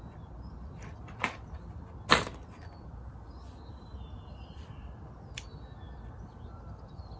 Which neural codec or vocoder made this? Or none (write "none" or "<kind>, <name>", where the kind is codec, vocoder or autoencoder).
none